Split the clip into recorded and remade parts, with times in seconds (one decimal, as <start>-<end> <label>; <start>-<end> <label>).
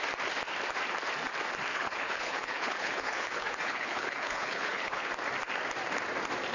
0.0-1.7 recorded; 1.7-5.1 remade; 5.1-6.5 recorded